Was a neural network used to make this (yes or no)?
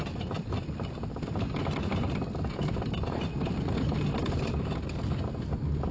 no